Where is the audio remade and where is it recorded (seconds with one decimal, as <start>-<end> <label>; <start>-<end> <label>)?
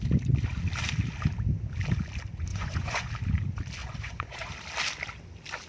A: 0.0-2.5 recorded; 2.5-3.1 remade; 3.1-3.8 recorded; 3.8-4.5 remade; 4.5-5.7 recorded